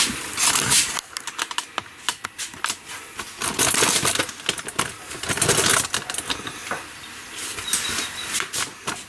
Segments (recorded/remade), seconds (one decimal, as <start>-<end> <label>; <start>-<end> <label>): 0.0-6.6 recorded; 6.6-9.1 remade